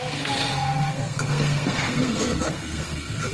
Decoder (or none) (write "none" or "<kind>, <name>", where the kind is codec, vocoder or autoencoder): codec, SNAC